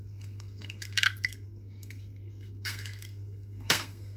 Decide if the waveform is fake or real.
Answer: fake